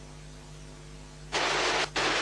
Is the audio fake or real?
real